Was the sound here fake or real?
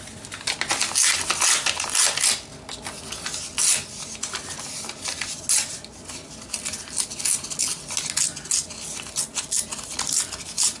real